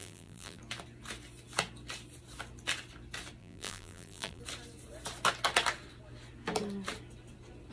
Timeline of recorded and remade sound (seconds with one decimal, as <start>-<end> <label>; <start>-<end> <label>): 0.0-0.6 remade; 0.6-3.4 recorded; 3.4-4.4 remade; 4.4-7.7 recorded

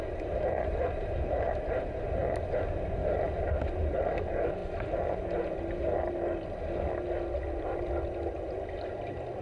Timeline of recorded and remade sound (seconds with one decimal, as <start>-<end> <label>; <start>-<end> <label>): 0.0-2.2 remade; 2.2-4.0 recorded; 4.0-4.6 remade; 4.6-9.4 recorded